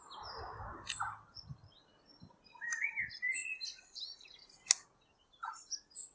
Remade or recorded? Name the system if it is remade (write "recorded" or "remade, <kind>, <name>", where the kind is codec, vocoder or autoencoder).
recorded